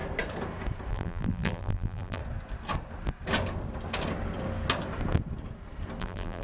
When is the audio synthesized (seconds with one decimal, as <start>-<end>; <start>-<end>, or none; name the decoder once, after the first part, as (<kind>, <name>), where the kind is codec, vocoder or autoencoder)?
0.9-2.2 (vocoder, BigVGAN v2); 6.0-6.4